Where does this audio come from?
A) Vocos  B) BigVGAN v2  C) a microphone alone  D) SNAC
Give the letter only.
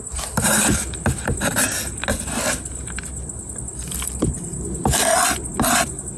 C